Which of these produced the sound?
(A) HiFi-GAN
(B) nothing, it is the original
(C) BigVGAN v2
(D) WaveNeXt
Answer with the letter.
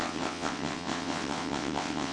D